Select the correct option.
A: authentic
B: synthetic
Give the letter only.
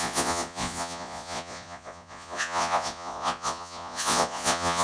B